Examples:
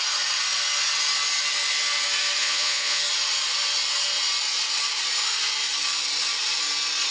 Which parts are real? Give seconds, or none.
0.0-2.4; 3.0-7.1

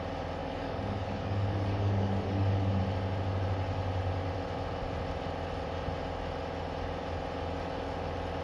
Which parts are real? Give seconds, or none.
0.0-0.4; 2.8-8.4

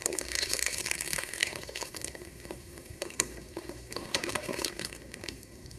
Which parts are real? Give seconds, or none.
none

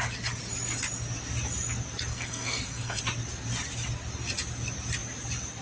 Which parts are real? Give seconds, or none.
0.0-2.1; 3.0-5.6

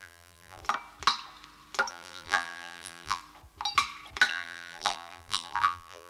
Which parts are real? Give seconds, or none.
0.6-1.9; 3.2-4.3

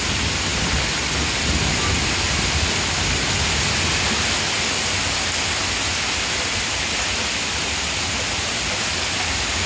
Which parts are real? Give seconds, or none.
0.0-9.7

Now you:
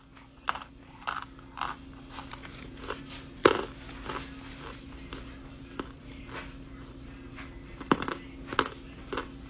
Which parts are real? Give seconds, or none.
0.0-2.4; 3.0-9.5